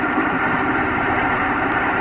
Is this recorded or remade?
remade